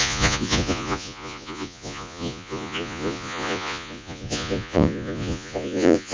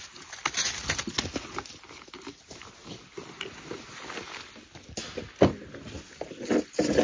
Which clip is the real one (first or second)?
second